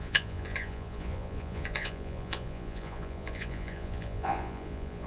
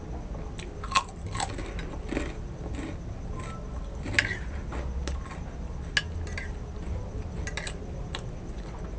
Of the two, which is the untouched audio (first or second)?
second